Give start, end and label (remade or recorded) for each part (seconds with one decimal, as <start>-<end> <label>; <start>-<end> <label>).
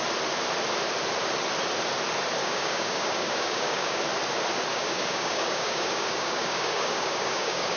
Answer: 0.0-2.4 recorded; 2.4-4.0 remade; 4.0-4.7 recorded; 4.7-7.8 remade